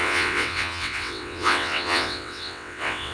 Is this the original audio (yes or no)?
no